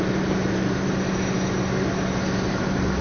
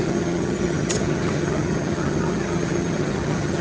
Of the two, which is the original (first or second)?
first